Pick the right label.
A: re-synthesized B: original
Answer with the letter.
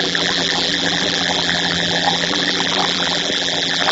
A